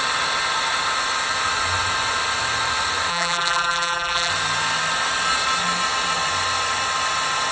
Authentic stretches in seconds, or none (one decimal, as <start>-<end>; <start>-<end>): 0.0-3.1; 4.3-7.5